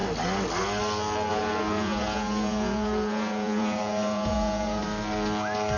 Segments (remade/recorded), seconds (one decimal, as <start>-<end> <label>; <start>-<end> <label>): 0.0-1.3 recorded; 1.3-4.8 remade; 4.8-5.8 recorded